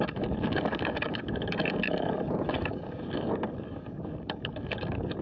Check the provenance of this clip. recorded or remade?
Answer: remade